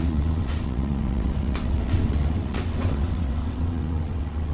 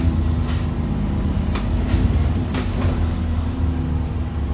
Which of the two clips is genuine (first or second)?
second